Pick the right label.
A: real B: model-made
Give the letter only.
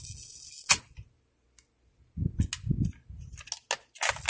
A